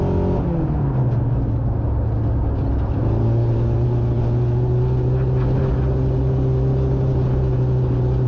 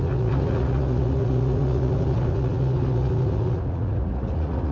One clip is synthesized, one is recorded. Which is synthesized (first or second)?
second